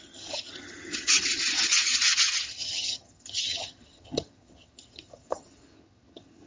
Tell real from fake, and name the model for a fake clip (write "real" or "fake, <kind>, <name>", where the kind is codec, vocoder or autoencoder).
fake, vocoder, HiFi-GAN